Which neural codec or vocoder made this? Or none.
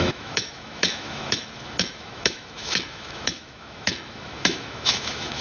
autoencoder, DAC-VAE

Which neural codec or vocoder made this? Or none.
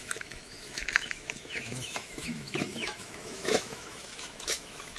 autoencoder, DAC-VAE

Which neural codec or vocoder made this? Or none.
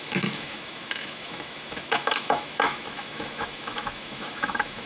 autoencoder, DAC-VAE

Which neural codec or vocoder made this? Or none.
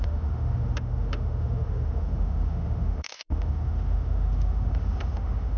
autoencoder, DAC-VAE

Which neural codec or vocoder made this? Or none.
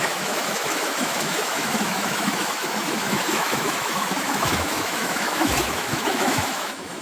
autoencoder, DAC-VAE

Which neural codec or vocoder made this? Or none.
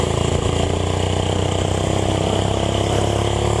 none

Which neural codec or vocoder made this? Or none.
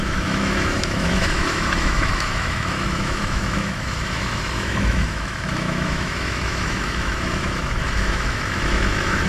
autoencoder, DAC-VAE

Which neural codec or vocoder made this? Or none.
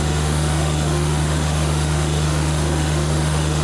autoencoder, DAC-VAE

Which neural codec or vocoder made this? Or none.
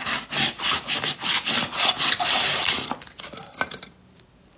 none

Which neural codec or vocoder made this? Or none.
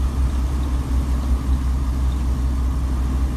none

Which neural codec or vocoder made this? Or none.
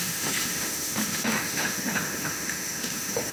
autoencoder, DAC-VAE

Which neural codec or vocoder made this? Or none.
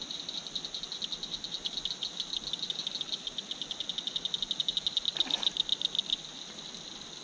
none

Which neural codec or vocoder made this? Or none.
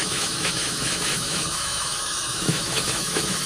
autoencoder, DAC-VAE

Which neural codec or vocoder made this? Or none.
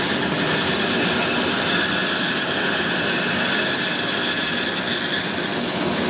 none